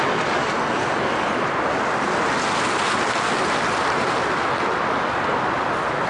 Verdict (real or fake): real